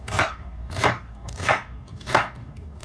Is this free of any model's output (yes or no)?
no